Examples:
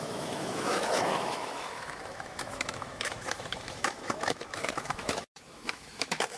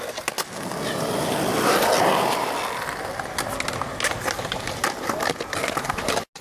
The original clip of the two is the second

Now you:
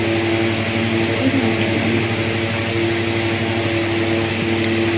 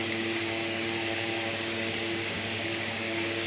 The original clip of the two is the first